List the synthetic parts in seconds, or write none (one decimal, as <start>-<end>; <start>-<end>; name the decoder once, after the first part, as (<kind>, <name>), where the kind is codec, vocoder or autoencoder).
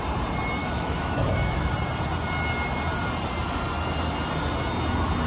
0.6-1.7 (autoencoder, DAC-VAE)